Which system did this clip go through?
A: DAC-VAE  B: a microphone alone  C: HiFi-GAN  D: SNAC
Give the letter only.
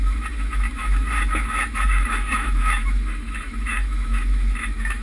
A